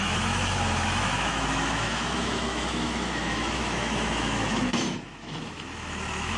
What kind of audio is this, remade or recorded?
remade